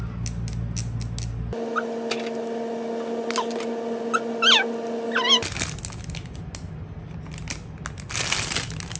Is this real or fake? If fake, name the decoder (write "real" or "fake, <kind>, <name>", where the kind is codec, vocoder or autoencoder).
real